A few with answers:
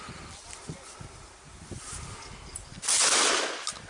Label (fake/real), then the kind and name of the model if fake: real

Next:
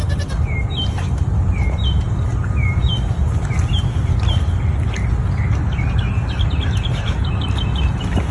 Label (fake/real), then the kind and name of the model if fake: real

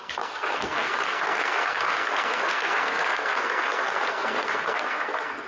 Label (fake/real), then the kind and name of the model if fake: fake, codec, SNAC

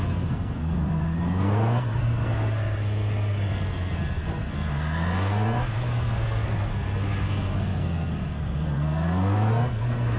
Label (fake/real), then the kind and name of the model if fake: fake, codec, SNAC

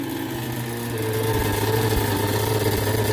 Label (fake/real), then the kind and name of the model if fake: real